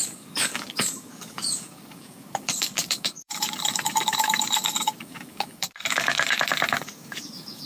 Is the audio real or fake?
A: fake